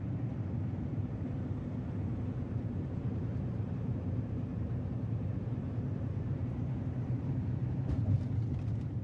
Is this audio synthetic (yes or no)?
yes